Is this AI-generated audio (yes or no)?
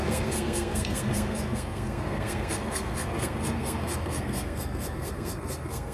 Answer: yes